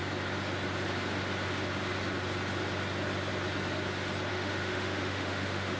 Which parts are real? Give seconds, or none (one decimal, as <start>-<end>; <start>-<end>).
0.0-4.3